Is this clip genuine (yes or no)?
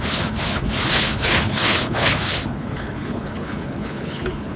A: no